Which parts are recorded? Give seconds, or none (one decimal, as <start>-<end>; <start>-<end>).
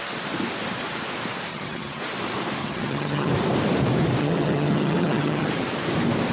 0.0-1.5; 2.0-2.6; 3.3-4.2; 5.5-6.3